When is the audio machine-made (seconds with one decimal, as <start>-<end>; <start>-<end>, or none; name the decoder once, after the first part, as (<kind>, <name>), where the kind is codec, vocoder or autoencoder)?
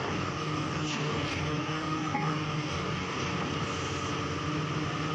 0.0-3.3 (codec, DAC)